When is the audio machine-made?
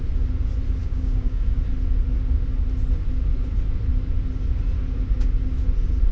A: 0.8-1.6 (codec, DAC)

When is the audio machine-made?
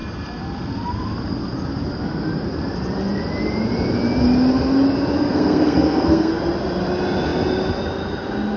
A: 5.2-6.3 (codec, SNAC)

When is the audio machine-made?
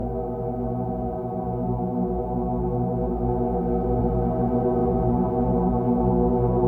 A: none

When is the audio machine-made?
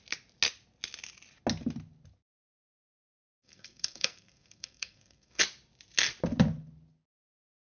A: 2.8-5.4 (codec, SNAC)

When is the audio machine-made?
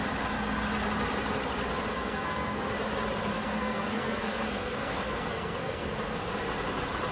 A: 1.9-2.7 (codec, SNAC); 3.3-6.3